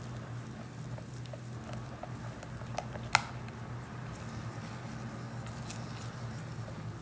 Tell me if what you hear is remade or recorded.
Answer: recorded